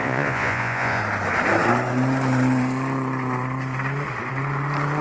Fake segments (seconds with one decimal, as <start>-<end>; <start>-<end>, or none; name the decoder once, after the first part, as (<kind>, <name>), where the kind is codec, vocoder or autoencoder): 0.0-1.0 (vocoder, Vocos)